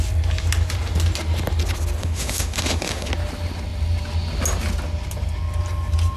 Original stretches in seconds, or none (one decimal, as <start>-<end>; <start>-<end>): 0.0-2.0; 3.1-6.2